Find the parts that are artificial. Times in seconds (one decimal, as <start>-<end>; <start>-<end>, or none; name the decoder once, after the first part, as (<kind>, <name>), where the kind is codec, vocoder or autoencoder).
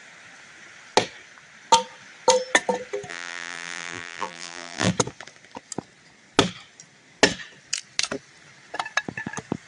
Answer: 3.1-4.9 (vocoder, BigVGAN v2)